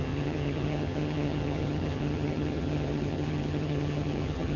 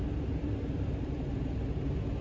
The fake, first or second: first